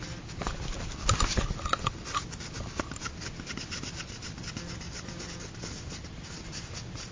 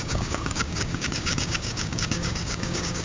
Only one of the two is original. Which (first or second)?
first